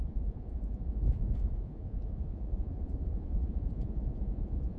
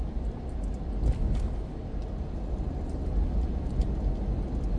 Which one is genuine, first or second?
second